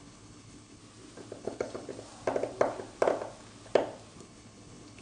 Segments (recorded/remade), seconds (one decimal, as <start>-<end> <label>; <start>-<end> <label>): 0.0-0.8 remade; 0.8-1.4 recorded; 1.4-1.9 remade; 1.9-4.2 recorded; 4.2-5.0 remade